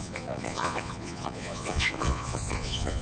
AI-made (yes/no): yes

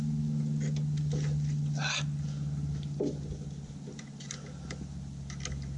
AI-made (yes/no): no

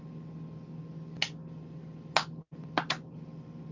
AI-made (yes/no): no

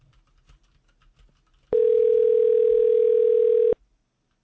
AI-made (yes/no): no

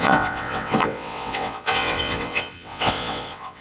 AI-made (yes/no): yes